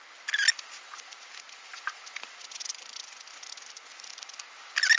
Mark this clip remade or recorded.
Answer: recorded